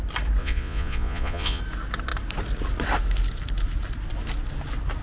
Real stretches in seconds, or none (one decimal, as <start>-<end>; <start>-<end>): 0.0-0.4; 1.6-5.0